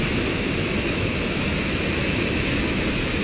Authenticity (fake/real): fake